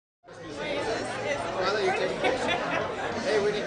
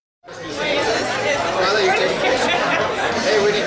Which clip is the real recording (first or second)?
first